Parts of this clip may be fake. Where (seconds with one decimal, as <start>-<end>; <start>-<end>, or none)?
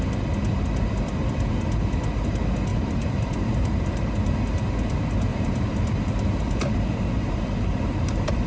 2.7-4.1; 5.3-8.5